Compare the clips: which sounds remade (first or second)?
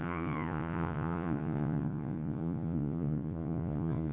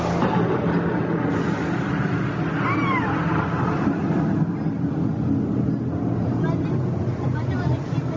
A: first